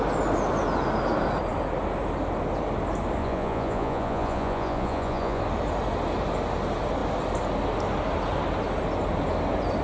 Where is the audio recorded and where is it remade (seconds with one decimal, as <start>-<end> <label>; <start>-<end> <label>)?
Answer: 0.0-3.2 recorded; 3.2-5.4 remade; 5.4-9.8 recorded